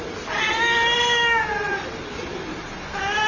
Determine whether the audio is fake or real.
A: real